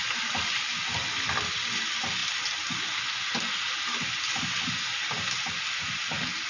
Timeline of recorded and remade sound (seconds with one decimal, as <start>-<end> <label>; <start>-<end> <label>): 0.0-6.5 recorded